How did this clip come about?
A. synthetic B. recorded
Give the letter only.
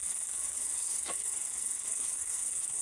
A